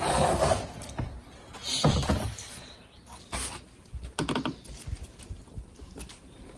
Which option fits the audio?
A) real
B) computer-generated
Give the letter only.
A